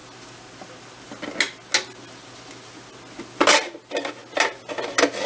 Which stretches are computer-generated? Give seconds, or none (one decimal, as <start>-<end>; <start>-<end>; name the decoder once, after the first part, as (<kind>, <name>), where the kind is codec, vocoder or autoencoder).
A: none